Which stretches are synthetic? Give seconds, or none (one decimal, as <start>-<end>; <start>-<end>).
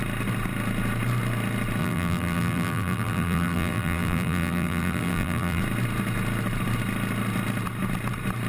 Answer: 1.8-5.6